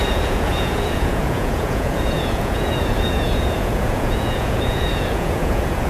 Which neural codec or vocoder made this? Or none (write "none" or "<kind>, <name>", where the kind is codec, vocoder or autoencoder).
vocoder, Vocos